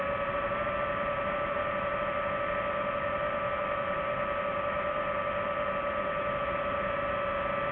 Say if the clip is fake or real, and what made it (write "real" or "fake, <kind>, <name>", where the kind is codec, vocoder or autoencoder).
real